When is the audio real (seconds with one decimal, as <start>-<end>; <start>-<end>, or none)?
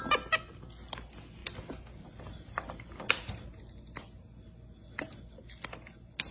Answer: 0.0-6.3